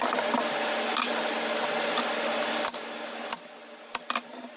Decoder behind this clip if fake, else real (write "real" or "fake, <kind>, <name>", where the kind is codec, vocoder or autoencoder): real